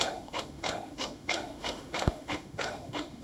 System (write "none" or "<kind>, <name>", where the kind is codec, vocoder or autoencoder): autoencoder, DAC-VAE